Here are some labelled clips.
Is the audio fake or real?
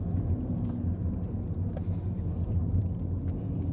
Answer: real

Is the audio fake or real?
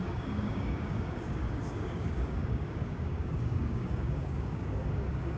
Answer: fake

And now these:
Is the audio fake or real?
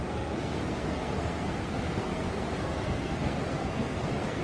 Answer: fake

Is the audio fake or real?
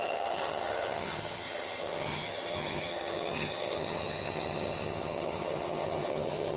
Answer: fake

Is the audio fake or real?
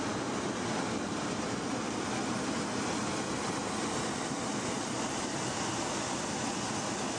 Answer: real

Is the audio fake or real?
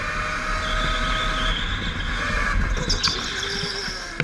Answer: real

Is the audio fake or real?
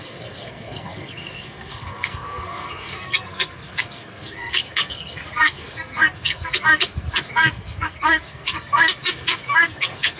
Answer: fake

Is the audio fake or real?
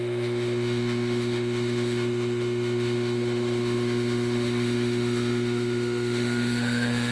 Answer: fake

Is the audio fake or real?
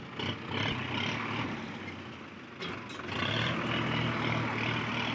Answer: real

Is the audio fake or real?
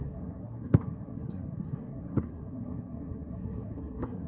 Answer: fake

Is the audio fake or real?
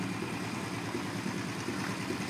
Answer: real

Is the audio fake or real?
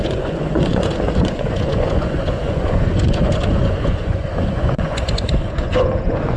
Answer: fake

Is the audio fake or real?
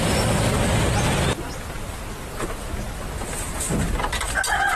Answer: real